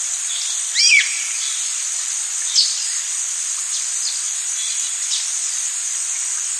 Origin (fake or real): real